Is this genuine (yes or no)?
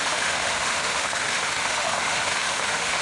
no